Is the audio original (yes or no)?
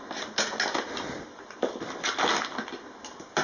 yes